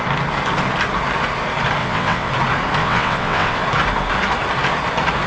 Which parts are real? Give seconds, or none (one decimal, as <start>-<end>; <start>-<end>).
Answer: 0.0-1.8; 2.3-2.8; 3.6-5.3